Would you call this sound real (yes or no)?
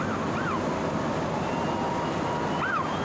yes